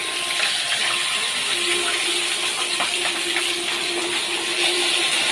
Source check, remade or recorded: recorded